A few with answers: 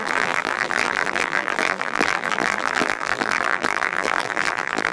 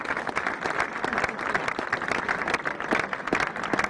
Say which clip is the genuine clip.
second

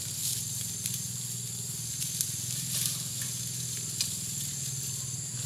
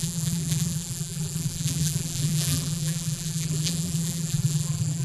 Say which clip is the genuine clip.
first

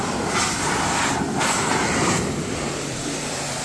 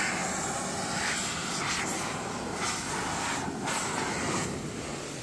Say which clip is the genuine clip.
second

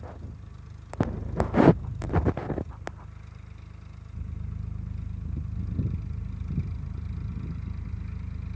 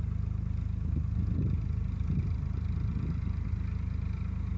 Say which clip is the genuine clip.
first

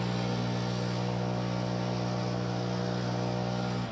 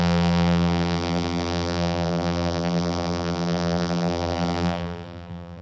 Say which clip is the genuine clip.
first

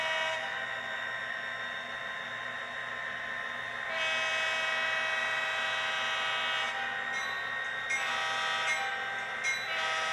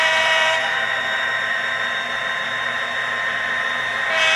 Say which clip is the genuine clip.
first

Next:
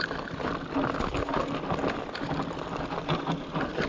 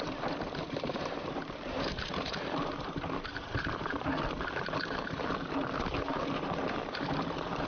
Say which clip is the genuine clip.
first